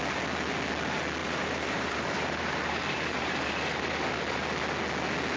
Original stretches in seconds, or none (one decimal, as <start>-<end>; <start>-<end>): 0.0-1.2; 4.4-5.4